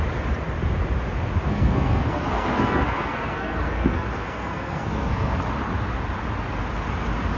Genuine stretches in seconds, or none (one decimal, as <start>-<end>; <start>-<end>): 0.0-1.5; 5.4-7.4